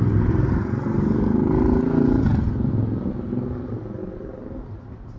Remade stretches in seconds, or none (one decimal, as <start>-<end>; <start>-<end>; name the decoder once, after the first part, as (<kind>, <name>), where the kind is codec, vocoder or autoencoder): none

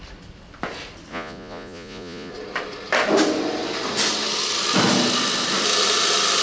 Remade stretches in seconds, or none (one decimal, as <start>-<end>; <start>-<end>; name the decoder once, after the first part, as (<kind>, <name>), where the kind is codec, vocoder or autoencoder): 1.1-2.3 (vocoder, Vocos)

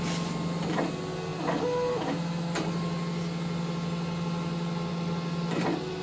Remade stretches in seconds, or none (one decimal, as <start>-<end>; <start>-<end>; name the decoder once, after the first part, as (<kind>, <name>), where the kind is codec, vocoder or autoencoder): none

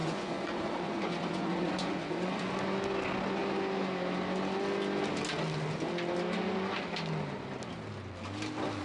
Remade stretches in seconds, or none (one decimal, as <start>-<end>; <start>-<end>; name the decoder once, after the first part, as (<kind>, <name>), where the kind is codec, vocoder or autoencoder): 0.0-2.5 (vocoder, Vocos)

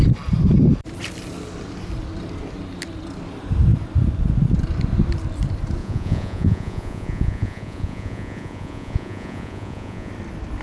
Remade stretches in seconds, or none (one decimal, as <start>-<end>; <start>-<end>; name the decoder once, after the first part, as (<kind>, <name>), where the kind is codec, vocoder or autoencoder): 5.8-10.1 (vocoder, Vocos)

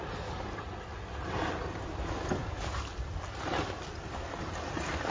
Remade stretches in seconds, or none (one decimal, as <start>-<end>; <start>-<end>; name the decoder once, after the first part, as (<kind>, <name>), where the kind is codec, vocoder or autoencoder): none

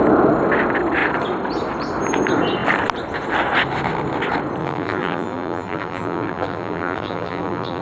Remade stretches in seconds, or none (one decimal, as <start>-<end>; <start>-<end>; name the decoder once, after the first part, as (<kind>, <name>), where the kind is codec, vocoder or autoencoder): 4.6-7.8 (vocoder, BigVGAN v2)